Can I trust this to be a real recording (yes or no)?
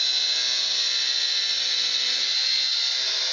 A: yes